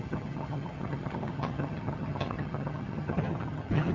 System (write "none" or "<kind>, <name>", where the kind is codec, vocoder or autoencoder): vocoder, HiFi-GAN